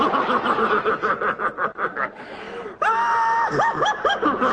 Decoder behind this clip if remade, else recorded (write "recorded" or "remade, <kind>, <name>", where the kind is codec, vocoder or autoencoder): recorded